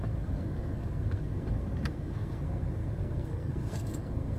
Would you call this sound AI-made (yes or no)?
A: yes